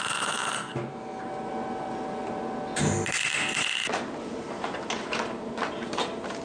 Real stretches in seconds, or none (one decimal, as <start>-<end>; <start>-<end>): 0.0-6.4

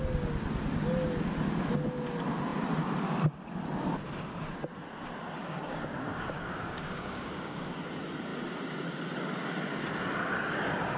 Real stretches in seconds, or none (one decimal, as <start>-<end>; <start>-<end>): 0.0-5.4; 7.8-11.0

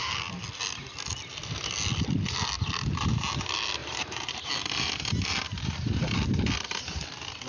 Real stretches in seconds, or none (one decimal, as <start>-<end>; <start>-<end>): 0.0-3.8; 6.1-7.5

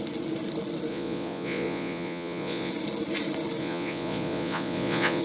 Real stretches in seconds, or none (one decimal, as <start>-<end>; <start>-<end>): 0.0-0.9; 2.7-3.6